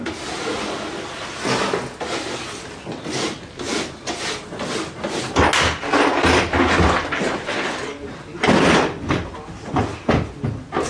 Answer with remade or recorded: recorded